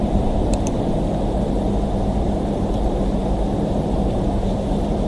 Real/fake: fake